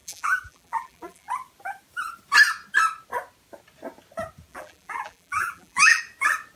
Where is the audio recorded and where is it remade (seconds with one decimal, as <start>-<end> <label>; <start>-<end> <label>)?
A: 0.0-1.3 remade; 1.3-4.5 recorded; 4.5-6.0 remade; 6.0-6.6 recorded